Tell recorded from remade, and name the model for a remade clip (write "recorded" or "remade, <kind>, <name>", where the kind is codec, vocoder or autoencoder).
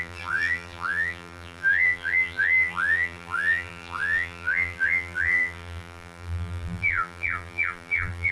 remade, vocoder, BigVGAN v2